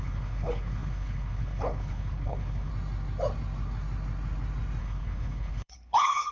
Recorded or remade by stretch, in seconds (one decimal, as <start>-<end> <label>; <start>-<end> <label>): 0.0-2.7 remade; 2.7-4.8 recorded; 4.8-6.3 remade